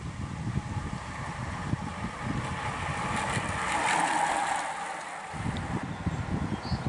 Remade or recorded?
recorded